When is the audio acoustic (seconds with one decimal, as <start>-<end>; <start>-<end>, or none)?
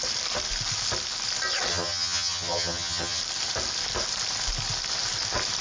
0.0-1.7; 3.2-5.6